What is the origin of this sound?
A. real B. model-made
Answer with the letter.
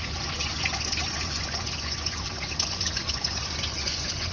B